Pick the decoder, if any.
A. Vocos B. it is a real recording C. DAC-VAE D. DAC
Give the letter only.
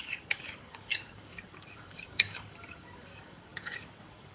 D